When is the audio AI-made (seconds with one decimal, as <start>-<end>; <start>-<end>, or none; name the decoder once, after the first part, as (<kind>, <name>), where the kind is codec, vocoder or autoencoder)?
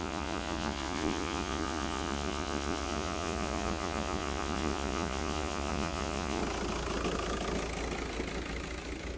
0.0-6.4 (vocoder, Vocos)